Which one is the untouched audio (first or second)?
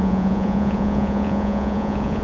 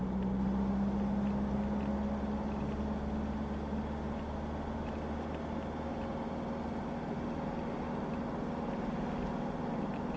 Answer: second